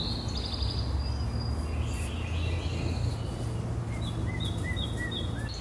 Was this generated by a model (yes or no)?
no